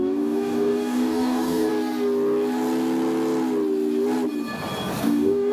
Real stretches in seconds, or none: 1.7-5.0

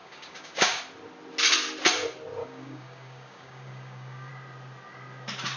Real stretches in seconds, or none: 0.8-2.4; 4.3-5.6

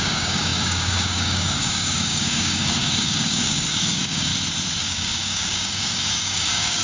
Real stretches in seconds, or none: 4.3-4.8

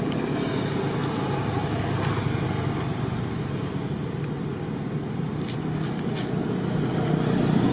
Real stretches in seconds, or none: 0.0-7.7

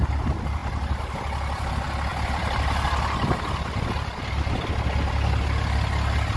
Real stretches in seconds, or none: 0.0-6.4

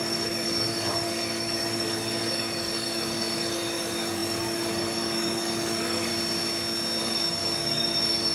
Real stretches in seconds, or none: 6.1-7.0

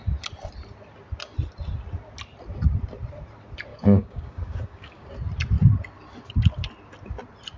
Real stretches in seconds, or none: 0.0-3.7; 5.1-7.6

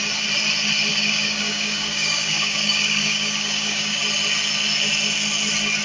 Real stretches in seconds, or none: 0.0-0.9; 4.0-5.8